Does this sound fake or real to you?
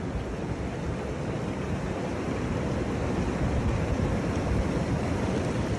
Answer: real